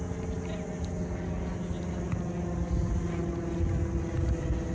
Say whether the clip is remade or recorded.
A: recorded